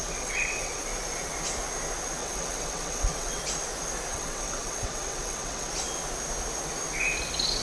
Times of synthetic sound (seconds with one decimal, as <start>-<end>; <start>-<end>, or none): 0.0-0.8; 2.2-3.4; 4.1-5.7